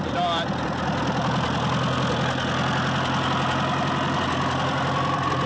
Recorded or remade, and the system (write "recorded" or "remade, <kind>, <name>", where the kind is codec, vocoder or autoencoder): recorded